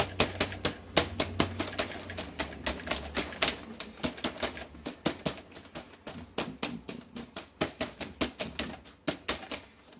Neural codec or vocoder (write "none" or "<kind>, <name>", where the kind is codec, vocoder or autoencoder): none